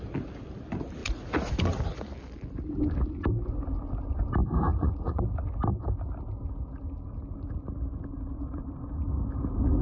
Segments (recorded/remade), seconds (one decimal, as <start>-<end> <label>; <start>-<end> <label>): 0.0-1.0 recorded; 1.0-1.5 remade; 1.5-4.7 recorded; 4.7-5.2 remade; 5.2-9.8 recorded